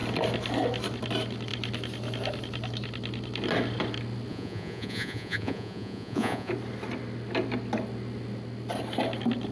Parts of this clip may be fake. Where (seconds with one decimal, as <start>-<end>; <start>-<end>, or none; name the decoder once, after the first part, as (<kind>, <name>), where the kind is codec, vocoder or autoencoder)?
4.3-6.5 (vocoder, Vocos)